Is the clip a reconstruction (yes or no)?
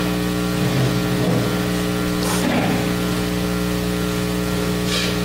no